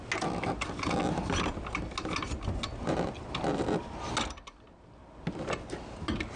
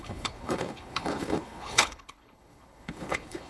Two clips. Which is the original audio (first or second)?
first